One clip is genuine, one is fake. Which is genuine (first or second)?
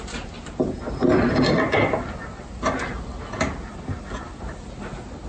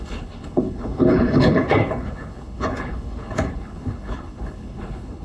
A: first